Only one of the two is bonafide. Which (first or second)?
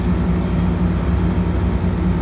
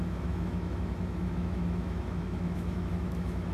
first